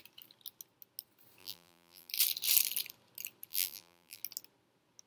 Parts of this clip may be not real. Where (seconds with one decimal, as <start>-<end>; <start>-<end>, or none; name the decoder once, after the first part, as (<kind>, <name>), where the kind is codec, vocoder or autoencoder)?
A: 1.4-2.1 (vocoder, BigVGAN v2); 3.5-4.2